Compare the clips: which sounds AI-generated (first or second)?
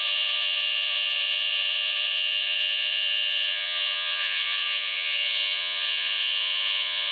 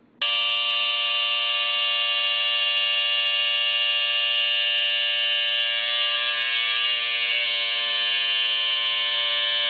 first